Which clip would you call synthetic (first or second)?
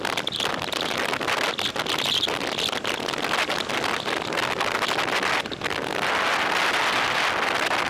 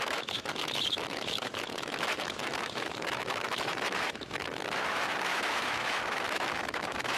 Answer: second